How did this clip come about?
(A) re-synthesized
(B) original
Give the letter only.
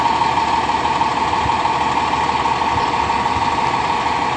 B